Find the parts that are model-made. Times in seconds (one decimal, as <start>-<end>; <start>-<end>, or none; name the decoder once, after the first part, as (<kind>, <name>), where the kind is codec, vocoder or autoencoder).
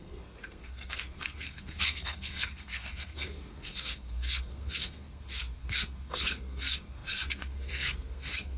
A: 0.0-8.6 (codec, SNAC)